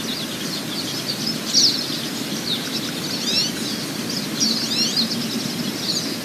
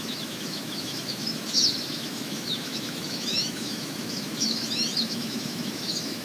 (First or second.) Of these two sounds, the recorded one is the first